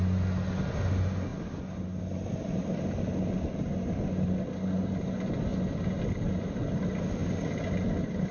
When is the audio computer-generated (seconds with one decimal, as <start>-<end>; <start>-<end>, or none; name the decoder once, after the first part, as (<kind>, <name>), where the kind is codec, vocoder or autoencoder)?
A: none